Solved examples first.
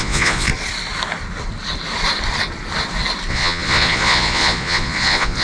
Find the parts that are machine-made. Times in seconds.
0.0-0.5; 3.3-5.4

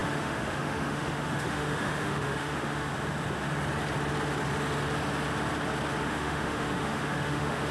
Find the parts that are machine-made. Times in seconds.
0.0-2.9; 6.0-7.7

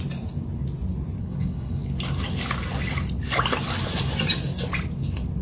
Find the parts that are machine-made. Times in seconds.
1.2-1.8

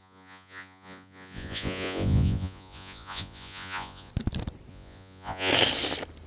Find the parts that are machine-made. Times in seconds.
0.0-4.1; 4.7-5.5